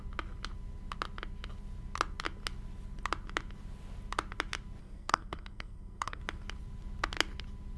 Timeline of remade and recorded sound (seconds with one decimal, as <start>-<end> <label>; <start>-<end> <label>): 0.0-4.8 recorded; 4.8-6.2 remade; 6.2-7.8 recorded